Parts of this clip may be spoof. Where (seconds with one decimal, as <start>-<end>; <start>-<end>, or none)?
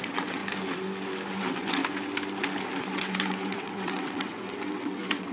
0.0-0.4; 1.3-1.8; 2.8-5.3